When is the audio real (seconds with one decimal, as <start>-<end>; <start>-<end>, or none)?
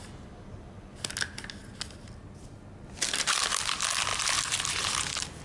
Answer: 0.0-5.4